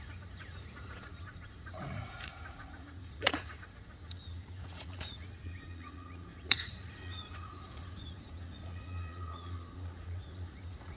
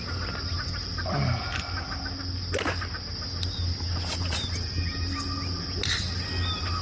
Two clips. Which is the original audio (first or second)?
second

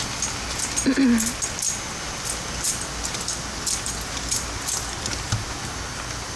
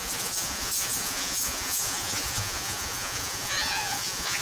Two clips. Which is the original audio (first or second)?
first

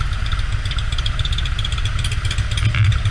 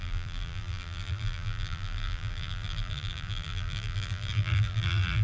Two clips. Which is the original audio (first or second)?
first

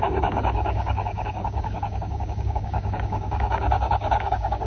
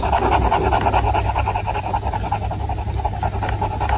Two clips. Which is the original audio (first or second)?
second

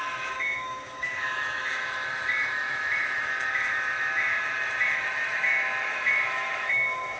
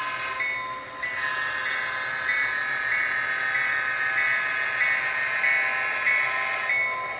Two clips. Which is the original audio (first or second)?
second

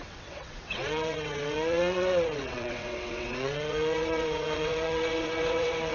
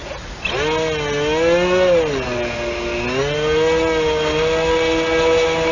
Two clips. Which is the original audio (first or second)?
second